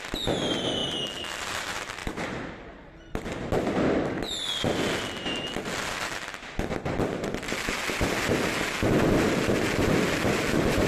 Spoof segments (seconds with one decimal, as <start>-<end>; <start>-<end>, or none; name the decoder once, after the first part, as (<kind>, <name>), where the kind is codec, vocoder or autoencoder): none